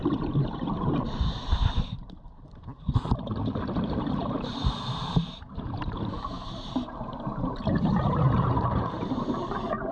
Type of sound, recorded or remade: remade